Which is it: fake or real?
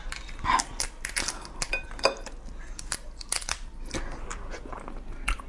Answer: real